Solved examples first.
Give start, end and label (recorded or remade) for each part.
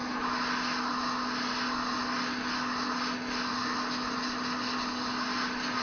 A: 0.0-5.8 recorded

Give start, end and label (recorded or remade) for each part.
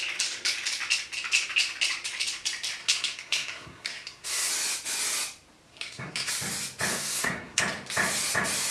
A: 0.0-2.8 recorded; 2.8-4.5 remade; 4.5-5.7 recorded; 5.7-6.3 remade; 6.3-6.9 recorded; 6.9-7.6 remade; 7.6-8.7 recorded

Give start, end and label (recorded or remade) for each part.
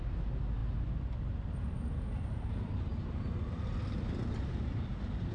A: 0.0-5.3 recorded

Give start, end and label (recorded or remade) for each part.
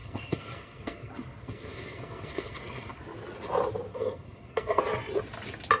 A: 0.0-3.0 remade; 3.0-3.9 recorded; 3.9-4.8 remade; 4.8-5.8 recorded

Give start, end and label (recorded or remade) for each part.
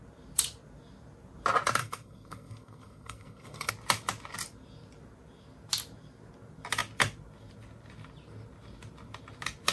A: 0.0-1.8 recorded; 1.8-3.7 remade; 3.7-9.7 recorded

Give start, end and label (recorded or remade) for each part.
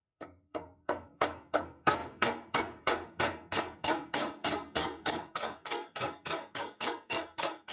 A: 0.0-7.7 remade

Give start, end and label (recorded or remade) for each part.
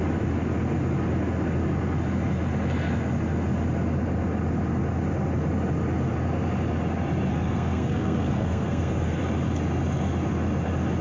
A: 0.0-7.3 recorded; 7.3-9.2 remade; 9.2-11.0 recorded